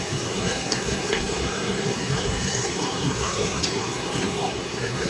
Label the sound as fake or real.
fake